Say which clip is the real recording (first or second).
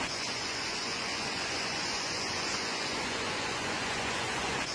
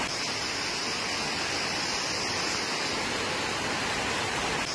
second